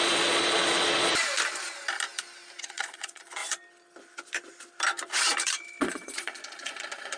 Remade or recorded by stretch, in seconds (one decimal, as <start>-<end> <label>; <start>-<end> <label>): 0.0-1.1 remade; 1.1-2.6 recorded; 2.6-3.4 remade; 3.4-5.8 recorded; 5.8-7.2 remade